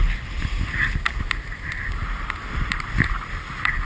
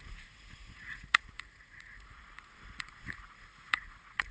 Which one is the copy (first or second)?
second